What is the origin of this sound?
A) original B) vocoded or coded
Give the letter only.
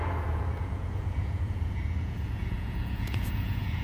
B